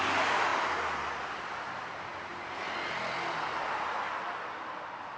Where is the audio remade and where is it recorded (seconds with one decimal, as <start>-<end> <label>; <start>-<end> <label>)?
0.0-5.2 recorded